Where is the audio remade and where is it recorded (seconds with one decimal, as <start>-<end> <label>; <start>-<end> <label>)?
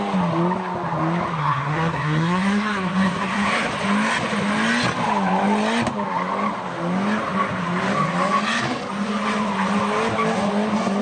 0.0-1.4 recorded; 1.4-3.7 remade; 3.7-11.0 recorded